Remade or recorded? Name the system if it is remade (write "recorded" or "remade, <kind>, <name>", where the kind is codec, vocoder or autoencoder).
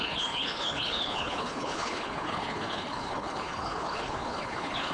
remade, codec, HILCodec